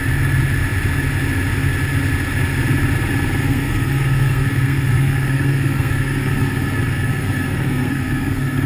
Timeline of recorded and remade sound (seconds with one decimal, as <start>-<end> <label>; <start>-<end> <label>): 0.0-3.4 recorded; 3.4-8.7 remade